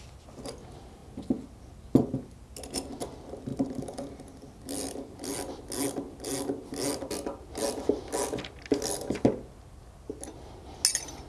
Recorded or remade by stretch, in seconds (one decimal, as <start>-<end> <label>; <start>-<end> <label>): 0.0-11.3 recorded